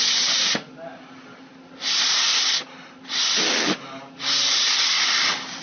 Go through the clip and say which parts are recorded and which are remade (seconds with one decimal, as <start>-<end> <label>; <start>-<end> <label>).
0.0-5.6 recorded